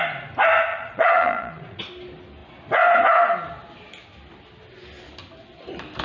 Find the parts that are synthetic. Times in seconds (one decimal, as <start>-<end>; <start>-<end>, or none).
0.7-1.8